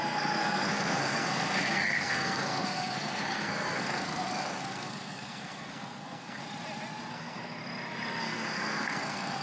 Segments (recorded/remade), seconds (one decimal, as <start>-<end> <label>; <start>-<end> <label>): 0.0-6.4 remade; 6.4-7.1 recorded; 7.1-7.6 remade; 7.6-8.2 recorded; 8.2-9.4 remade